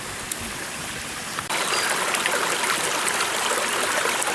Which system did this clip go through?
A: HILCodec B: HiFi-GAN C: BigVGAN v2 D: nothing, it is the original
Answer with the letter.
C